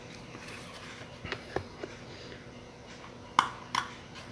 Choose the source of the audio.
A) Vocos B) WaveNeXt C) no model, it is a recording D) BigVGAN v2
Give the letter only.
C